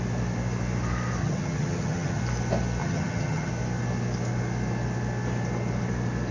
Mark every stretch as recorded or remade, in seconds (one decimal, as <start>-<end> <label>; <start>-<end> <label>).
0.0-1.2 recorded; 1.2-2.2 remade; 2.2-2.8 recorded; 2.8-3.5 remade; 3.5-6.3 recorded

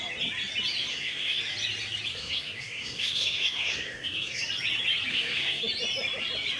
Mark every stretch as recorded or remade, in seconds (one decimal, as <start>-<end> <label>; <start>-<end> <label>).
0.0-0.9 recorded; 0.9-1.4 remade; 1.4-2.1 recorded; 2.1-4.4 remade; 4.4-5.1 recorded; 5.1-5.6 remade; 5.6-6.6 recorded

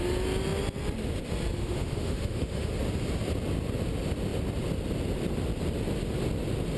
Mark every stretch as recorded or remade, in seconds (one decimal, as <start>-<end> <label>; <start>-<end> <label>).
0.0-1.6 recorded; 1.6-2.7 remade; 2.7-6.8 recorded

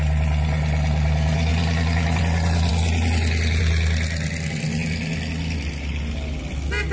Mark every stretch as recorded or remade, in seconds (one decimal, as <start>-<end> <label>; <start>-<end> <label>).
0.0-6.9 recorded

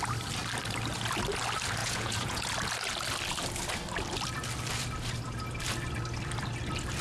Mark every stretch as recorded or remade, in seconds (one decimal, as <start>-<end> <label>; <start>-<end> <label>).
0.0-1.8 recorded; 1.8-2.5 remade; 2.5-7.0 recorded

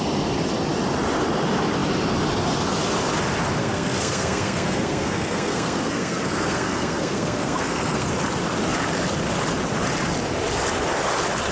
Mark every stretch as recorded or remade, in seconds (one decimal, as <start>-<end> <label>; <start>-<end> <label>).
0.0-3.6 recorded; 3.6-8.1 remade; 8.1-11.5 recorded

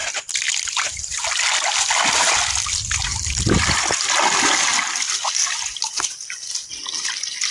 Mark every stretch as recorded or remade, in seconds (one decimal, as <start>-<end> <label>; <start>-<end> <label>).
0.0-7.5 recorded